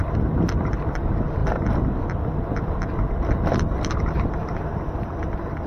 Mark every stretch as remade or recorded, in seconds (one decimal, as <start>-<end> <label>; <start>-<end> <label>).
0.0-5.7 recorded